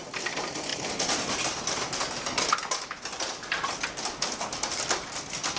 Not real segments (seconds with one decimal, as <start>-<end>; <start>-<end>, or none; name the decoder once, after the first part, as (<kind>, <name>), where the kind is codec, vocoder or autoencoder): 0.7-3.8 (vocoder, BigVGAN v2)